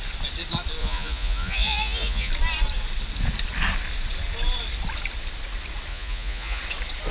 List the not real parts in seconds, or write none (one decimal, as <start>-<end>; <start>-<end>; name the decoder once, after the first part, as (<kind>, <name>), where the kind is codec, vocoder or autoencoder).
0.8-2.3 (vocoder, Vocos); 5.9-6.6